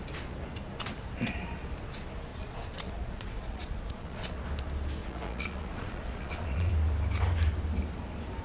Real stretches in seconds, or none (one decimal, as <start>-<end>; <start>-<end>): 0.0-2.3; 4.4-5.0; 6.7-8.4